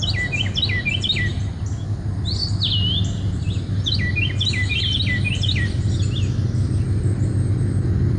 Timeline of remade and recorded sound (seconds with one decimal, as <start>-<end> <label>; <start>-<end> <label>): 0.0-8.2 recorded